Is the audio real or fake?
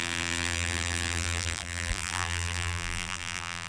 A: fake